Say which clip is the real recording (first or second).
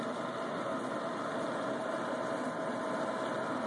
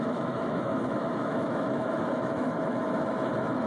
first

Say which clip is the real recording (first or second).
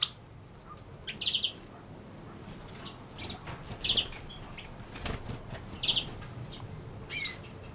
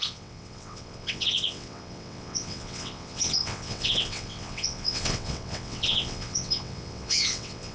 first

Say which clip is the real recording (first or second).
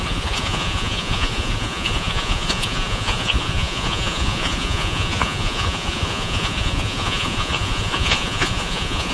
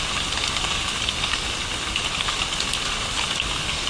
second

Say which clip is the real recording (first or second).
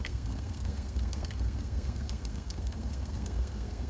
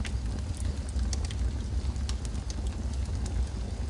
second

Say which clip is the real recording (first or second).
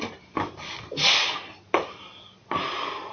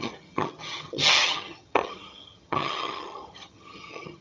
first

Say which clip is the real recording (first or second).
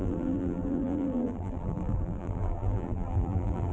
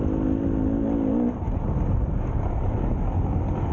second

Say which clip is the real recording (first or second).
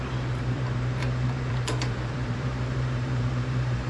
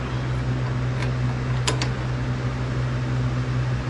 second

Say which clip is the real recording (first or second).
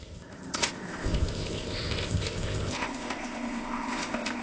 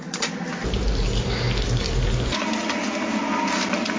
second